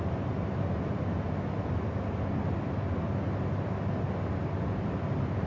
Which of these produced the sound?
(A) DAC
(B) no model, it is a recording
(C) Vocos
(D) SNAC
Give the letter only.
B